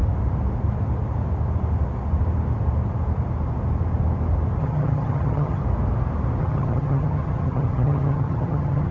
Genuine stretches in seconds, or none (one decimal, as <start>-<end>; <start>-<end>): 0.0-4.6; 5.6-6.4